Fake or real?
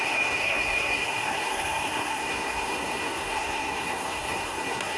fake